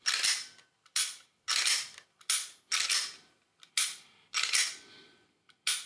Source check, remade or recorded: recorded